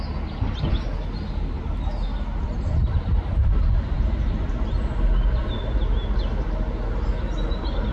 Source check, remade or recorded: recorded